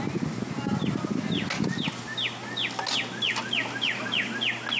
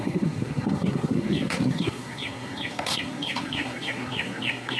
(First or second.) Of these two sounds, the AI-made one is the second